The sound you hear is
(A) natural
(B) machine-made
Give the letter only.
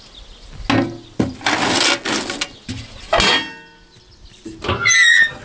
A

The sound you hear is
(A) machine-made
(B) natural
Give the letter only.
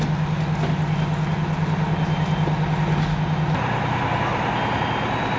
B